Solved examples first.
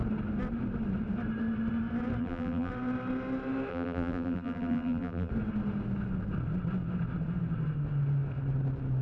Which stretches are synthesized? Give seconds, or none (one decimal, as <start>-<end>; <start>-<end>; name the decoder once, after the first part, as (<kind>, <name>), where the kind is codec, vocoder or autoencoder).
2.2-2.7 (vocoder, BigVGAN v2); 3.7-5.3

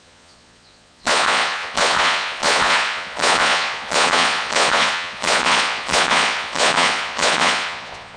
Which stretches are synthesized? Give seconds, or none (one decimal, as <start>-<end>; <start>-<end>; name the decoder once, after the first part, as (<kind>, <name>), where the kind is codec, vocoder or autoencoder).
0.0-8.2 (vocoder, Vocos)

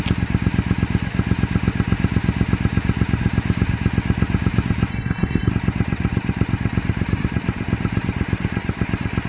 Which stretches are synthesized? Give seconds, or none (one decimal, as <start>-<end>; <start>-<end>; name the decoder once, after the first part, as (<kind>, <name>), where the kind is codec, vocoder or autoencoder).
4.9-5.5 (codec, HILCodec)